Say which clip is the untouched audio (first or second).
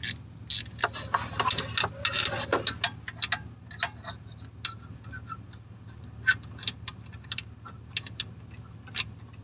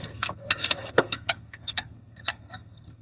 first